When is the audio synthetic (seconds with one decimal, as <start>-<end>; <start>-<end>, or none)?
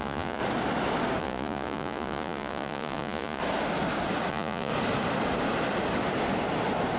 0.0-0.4; 1.2-3.4; 4.3-4.7